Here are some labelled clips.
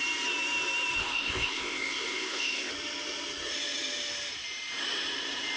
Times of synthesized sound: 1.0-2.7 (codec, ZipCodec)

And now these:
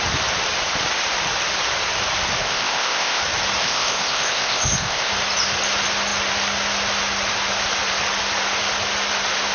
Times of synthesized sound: 2.4-3.2 (codec, ZipCodec); 3.6-5.1